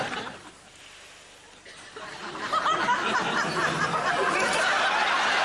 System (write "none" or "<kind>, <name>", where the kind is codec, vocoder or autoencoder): vocoder, BigVGAN v2